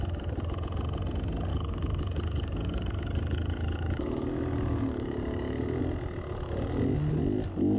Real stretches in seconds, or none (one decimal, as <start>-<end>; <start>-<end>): 0.0-1.5; 5.8-7.8